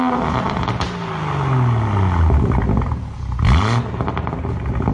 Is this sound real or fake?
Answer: real